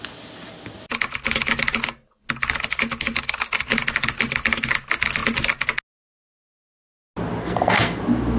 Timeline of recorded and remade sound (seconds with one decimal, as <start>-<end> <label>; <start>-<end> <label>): 0.0-7.4 recorded; 7.4-8.0 remade; 8.0-8.4 recorded